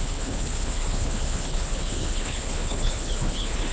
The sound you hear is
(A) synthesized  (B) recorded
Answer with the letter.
A